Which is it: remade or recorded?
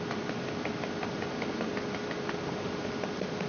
recorded